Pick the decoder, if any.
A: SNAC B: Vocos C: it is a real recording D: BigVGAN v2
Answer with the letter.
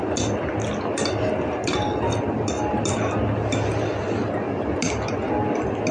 C